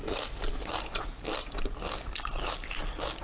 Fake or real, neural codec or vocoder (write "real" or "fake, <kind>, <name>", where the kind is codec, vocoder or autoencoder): real